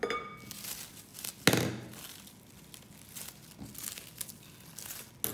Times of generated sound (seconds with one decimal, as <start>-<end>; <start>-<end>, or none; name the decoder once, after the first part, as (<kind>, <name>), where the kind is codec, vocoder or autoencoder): none